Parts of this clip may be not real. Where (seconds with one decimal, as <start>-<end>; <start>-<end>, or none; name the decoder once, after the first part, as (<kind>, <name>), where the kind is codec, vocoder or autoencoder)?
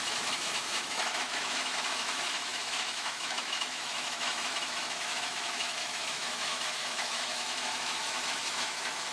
0.0-9.1 (autoencoder, DAC-VAE)